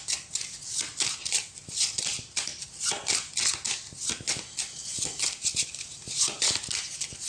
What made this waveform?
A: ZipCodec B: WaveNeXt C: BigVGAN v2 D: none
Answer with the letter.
D